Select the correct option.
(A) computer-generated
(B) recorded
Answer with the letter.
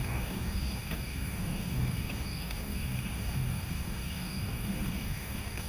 A